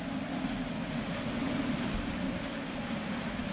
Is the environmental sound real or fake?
real